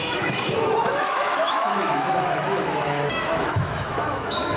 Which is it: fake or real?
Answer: fake